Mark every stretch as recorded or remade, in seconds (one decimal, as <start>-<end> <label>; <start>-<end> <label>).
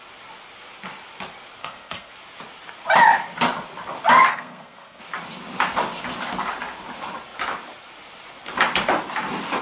0.0-1.6 recorded; 1.6-2.1 remade; 2.1-4.3 recorded; 4.3-5.0 remade; 5.0-9.6 recorded